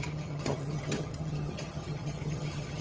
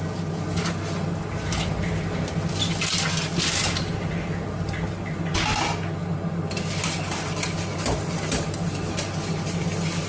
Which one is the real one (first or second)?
second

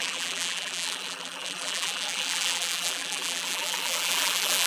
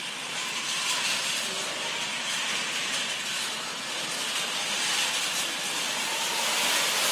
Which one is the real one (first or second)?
second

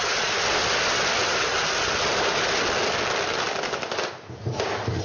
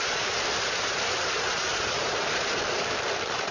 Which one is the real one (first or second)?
first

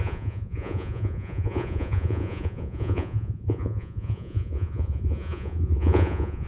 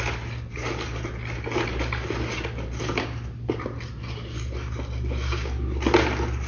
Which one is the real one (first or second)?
second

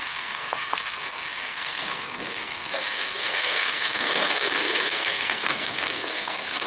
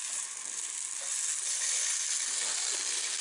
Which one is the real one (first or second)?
second